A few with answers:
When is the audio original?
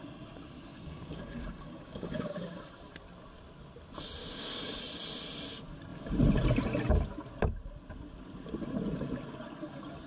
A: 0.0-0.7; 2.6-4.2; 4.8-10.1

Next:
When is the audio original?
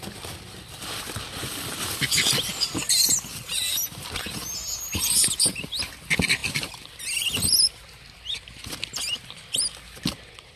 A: 0.0-10.6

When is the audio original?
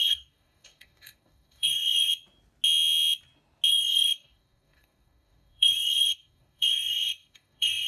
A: 2.1-3.7